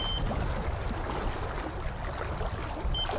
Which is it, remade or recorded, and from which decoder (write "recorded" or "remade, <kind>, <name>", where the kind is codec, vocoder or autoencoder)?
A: recorded